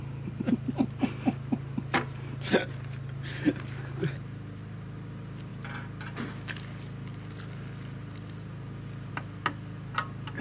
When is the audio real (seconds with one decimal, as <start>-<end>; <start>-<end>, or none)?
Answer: 0.0-10.4